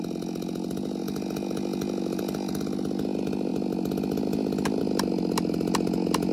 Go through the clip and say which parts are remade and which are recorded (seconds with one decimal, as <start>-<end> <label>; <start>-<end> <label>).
0.0-6.3 recorded